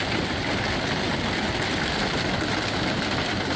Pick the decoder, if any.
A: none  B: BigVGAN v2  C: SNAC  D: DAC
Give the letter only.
A